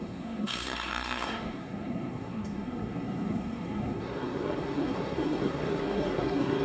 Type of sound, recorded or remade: remade